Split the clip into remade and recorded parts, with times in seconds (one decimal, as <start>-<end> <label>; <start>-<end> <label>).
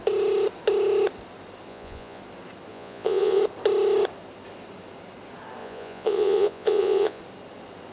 0.0-1.7 recorded; 1.7-2.2 remade; 2.2-2.7 recorded; 2.7-3.4 remade; 3.4-5.6 recorded; 5.6-7.2 remade; 7.2-7.9 recorded